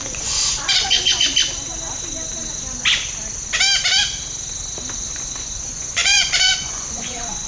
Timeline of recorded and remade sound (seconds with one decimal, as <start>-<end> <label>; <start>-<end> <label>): 0.0-1.3 remade; 1.3-5.4 recorded; 5.4-7.5 remade